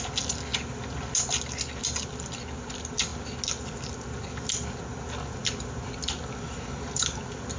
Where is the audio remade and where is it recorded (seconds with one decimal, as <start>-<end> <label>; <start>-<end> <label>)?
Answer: 0.0-7.6 recorded